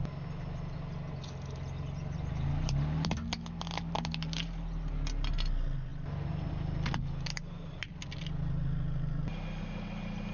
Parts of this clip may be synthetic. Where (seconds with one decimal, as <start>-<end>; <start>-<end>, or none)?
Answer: none